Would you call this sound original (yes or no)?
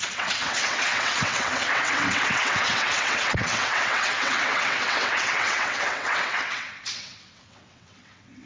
no